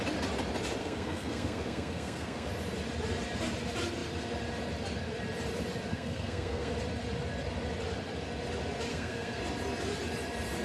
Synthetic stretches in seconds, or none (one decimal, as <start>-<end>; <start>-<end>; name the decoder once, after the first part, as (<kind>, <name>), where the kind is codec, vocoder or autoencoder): 0.8-2.5 (codec, SNAC); 5.9-6.7; 8.9-9.4